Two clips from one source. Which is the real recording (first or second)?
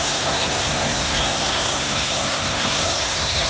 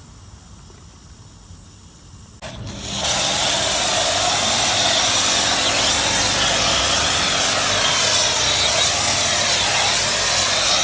second